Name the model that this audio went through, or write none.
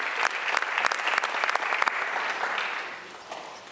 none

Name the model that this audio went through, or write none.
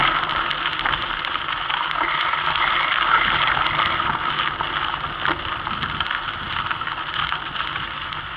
none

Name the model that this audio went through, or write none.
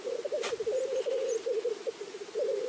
none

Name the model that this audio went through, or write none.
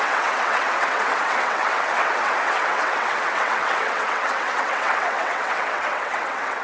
vocoder, WaveNeXt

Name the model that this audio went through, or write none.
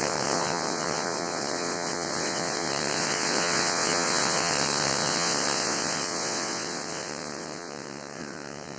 vocoder, WaveNeXt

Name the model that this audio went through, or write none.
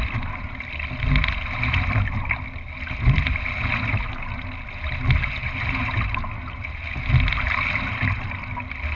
none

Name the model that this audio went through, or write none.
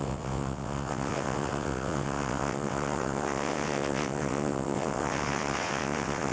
vocoder, WaveNeXt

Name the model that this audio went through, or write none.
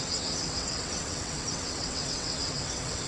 vocoder, WaveNeXt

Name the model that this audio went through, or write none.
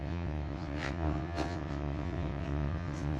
vocoder, WaveNeXt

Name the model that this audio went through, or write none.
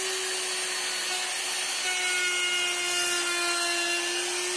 none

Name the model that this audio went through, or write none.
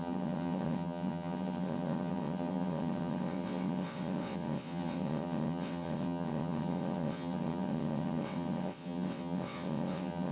vocoder, WaveNeXt